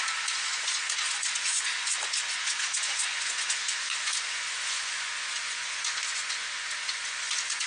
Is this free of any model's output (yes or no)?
no